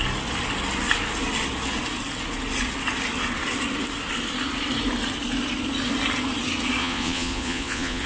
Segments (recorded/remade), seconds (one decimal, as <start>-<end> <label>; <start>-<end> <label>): 0.0-6.8 recorded; 6.8-8.1 remade